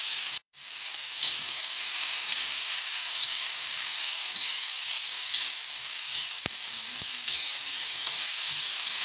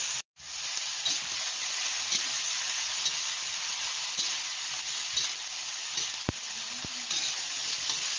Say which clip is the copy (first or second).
first